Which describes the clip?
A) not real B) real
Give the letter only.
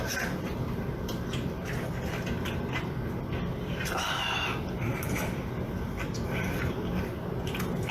B